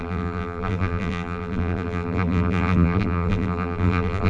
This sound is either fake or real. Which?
fake